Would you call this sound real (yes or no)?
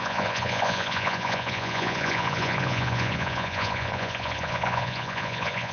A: no